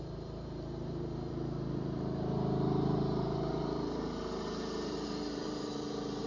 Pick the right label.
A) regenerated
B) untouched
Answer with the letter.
A